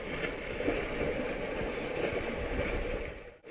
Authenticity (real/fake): real